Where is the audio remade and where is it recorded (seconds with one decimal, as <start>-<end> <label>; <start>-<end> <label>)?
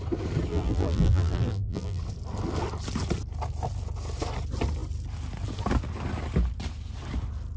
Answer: 0.0-0.5 recorded; 0.5-2.0 remade; 2.0-7.6 recorded